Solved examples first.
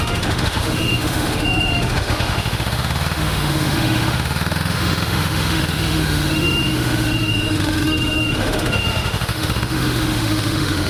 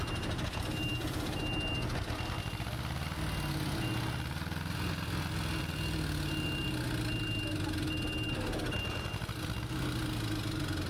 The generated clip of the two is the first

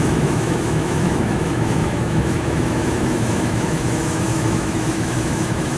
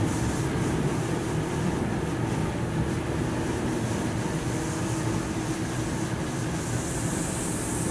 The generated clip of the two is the first